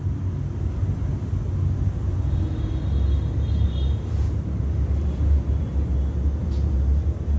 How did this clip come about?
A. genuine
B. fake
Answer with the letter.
A